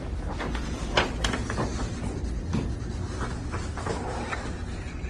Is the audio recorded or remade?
recorded